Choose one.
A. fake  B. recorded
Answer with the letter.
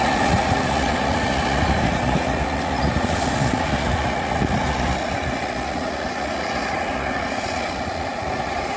A